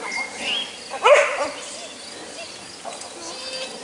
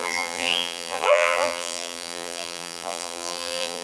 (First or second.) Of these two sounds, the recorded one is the first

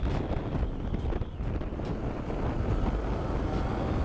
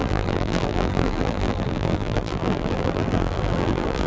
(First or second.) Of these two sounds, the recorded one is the first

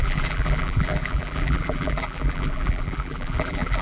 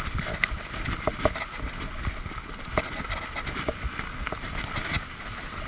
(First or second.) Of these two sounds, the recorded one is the second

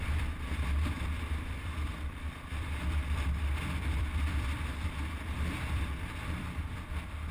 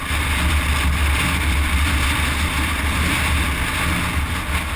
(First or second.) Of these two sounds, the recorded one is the second